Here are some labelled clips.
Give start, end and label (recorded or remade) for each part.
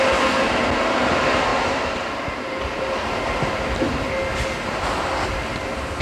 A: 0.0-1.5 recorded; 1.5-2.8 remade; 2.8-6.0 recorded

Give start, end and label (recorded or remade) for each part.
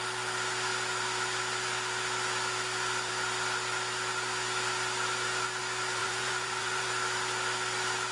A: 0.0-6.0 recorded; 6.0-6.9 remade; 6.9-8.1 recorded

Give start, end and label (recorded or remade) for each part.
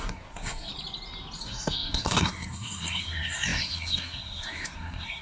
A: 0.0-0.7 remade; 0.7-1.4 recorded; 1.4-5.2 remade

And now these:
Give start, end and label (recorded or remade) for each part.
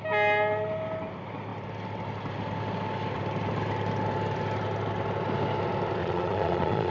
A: 0.0-6.0 recorded; 6.0-6.9 remade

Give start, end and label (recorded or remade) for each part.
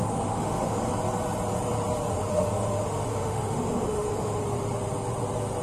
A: 0.0-0.8 remade; 0.8-2.1 recorded; 2.1-4.4 remade; 4.4-5.6 recorded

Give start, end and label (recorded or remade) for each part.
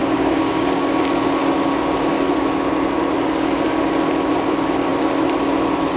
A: 0.0-0.9 remade; 0.9-1.4 recorded; 1.4-2.1 remade; 2.1-6.0 recorded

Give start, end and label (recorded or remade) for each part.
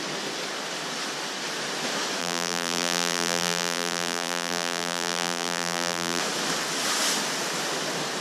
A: 0.0-2.2 recorded; 2.2-6.2 remade; 6.2-8.2 recorded